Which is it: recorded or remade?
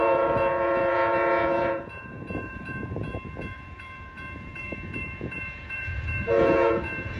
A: remade